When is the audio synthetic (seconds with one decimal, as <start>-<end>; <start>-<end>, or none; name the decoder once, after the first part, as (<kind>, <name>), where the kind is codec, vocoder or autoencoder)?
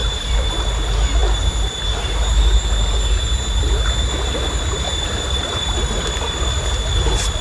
0.0-0.5 (vocoder, BigVGAN v2)